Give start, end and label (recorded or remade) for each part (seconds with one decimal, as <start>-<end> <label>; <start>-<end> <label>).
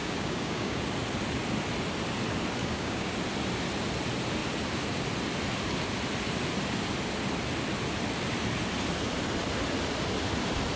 0.0-0.8 remade; 0.8-2.6 recorded; 2.6-3.1 remade; 3.1-10.8 recorded